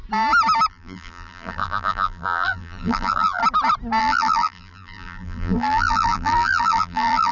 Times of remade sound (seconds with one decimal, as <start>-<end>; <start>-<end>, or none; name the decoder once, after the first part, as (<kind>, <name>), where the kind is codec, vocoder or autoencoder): 0.7-3.4 (vocoder, BigVGAN v2); 4.0-7.3